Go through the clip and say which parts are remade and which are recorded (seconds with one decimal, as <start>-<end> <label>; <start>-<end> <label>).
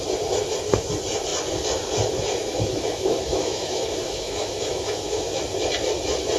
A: 0.0-2.4 recorded; 2.4-5.4 remade; 5.4-6.4 recorded